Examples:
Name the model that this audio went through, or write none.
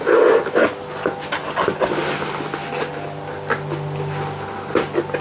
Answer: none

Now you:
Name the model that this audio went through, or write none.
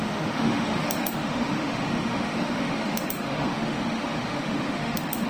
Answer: autoencoder, DAC-VAE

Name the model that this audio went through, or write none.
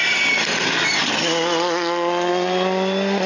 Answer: none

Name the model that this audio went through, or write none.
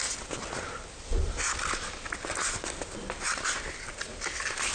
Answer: none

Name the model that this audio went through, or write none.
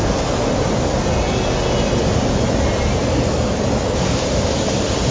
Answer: none